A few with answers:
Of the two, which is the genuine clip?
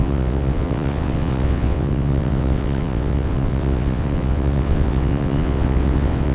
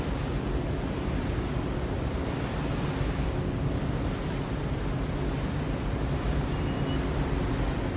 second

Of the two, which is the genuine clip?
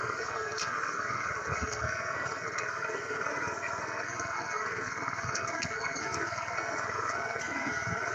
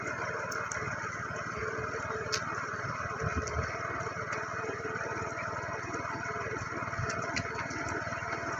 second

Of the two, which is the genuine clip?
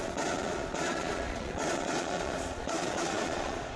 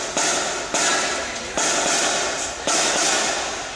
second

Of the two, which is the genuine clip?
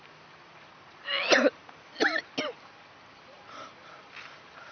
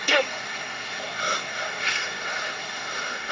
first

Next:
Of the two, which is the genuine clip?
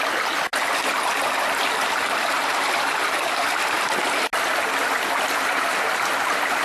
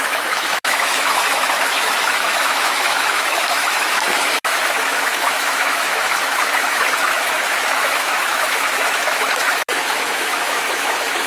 first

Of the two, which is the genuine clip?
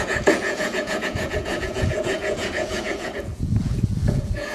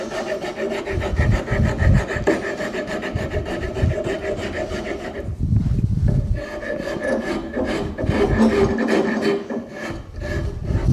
second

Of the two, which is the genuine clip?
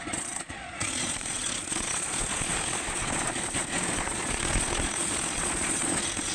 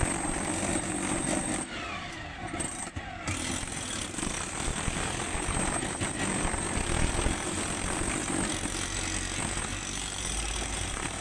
second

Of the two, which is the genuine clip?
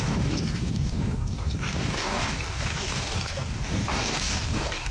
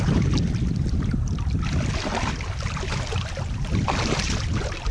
second